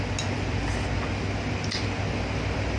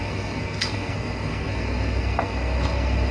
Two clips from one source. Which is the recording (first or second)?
first